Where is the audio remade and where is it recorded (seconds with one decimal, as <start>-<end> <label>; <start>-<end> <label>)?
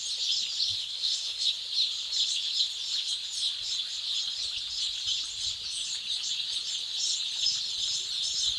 0.0-0.8 recorded; 0.8-1.5 remade; 1.5-8.6 recorded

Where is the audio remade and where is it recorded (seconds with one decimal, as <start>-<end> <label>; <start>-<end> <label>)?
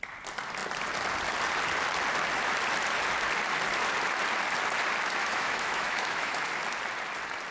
0.0-5.2 recorded; 5.2-6.5 remade; 6.5-7.5 recorded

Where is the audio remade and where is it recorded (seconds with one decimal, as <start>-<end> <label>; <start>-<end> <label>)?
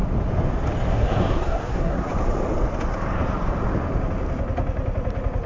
0.0-0.9 recorded; 0.9-2.1 remade; 2.1-5.5 recorded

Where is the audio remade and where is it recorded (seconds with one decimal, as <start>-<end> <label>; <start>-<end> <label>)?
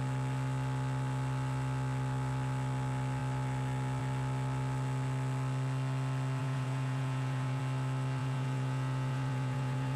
0.0-6.4 recorded; 6.4-7.6 remade; 7.6-8.2 recorded; 8.2-10.0 remade